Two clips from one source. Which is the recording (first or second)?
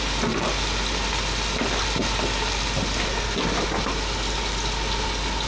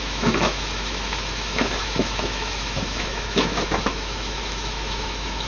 first